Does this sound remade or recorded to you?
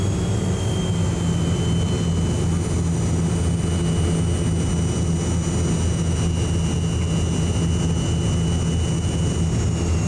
recorded